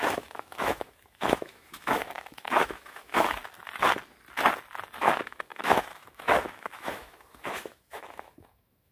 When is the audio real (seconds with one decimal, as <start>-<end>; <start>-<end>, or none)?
3.4-5.0